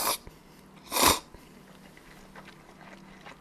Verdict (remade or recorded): recorded